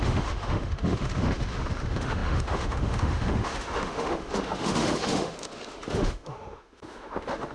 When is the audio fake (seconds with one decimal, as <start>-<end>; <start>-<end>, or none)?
0.0-7.5